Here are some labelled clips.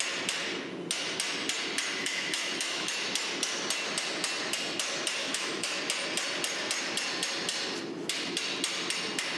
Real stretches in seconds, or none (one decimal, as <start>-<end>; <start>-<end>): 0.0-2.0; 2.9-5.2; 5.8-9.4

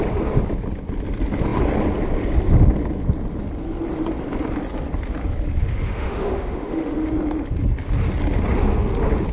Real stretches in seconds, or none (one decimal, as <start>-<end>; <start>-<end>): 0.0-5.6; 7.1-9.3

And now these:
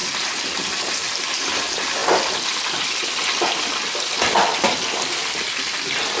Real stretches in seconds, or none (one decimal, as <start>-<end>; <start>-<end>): 0.0-6.2

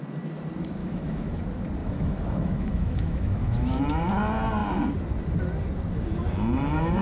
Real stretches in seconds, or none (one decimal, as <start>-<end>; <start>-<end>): 0.0-0.8; 1.4-1.8; 3.8-7.0

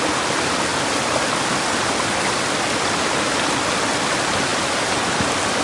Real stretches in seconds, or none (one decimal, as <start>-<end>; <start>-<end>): 0.0-5.6

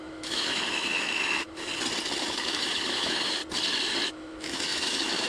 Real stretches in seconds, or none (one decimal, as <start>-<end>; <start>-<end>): 1.7-2.2; 3.4-4.1